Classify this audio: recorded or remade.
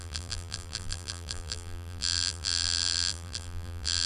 remade